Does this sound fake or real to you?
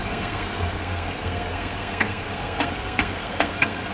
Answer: fake